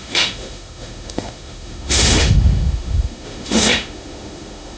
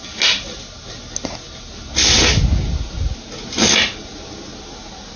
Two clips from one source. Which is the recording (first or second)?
second